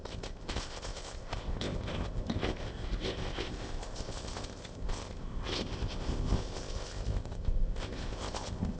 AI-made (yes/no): yes